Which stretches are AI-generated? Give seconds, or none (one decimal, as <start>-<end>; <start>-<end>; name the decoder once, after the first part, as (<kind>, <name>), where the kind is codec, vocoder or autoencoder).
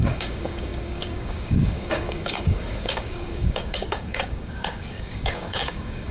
0.0-6.1 (codec, DAC)